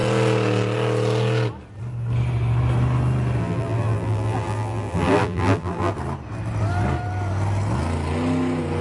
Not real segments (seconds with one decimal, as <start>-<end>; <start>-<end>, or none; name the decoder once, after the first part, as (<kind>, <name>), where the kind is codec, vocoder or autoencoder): 3.4-5.9 (vocoder, BigVGAN v2)